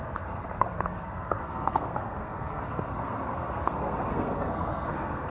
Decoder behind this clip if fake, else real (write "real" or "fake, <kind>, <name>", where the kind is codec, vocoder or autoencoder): fake, codec, SNAC